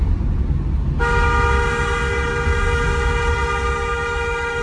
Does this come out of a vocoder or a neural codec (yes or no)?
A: no